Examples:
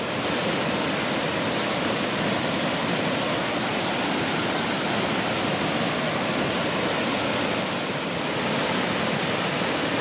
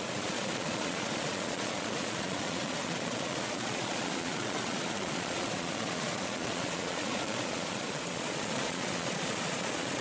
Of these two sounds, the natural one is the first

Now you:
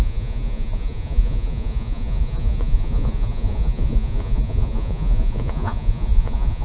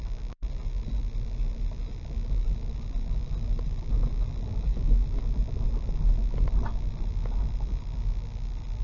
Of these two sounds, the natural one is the second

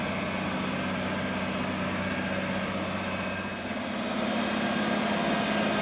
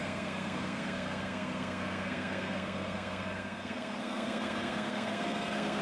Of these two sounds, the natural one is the first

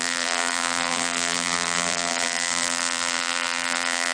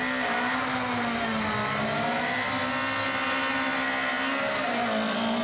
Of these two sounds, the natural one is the second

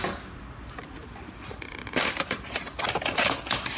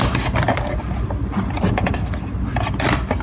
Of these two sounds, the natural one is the second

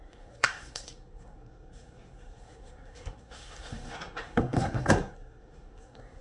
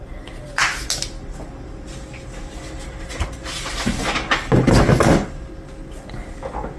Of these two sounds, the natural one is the second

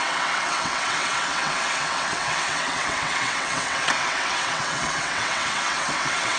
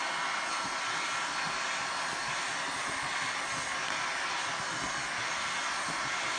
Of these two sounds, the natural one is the second